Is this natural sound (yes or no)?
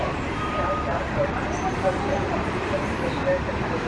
no